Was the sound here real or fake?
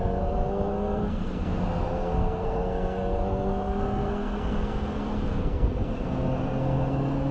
fake